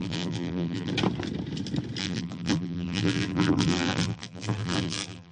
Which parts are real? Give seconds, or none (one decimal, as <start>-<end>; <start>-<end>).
0.9-2.0